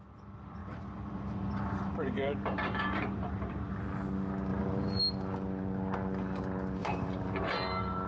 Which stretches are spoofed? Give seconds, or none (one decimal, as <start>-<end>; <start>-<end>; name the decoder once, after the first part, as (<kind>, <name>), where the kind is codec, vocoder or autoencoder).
0.6-3.7 (vocoder, BigVGAN v2); 4.5-5.0; 6.8-7.5